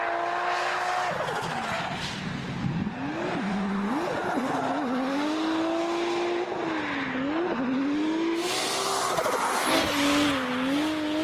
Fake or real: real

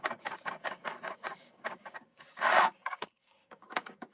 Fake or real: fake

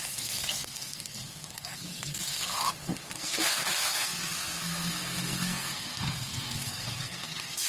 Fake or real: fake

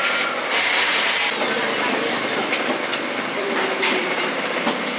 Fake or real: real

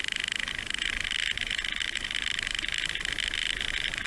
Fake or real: real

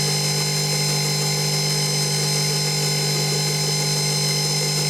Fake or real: real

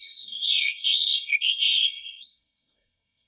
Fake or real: fake